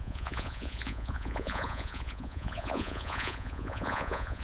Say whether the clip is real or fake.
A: fake